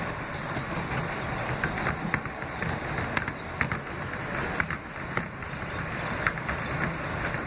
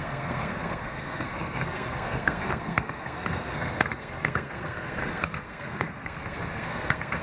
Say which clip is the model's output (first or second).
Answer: second